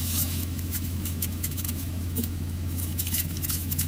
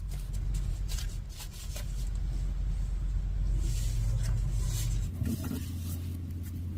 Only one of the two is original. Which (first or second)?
second